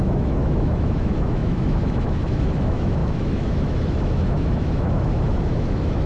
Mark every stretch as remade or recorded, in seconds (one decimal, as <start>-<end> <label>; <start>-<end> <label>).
0.0-6.1 remade